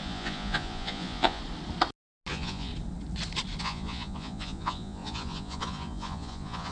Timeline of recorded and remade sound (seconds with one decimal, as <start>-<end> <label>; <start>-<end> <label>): 0.0-1.4 remade; 1.4-2.3 recorded; 2.3-2.7 remade; 2.7-3.6 recorded; 3.6-6.7 remade

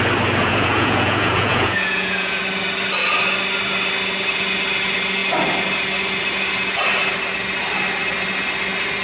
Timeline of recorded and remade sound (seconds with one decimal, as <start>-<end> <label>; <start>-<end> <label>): 0.0-0.5 recorded; 0.5-2.4 remade; 2.4-9.0 recorded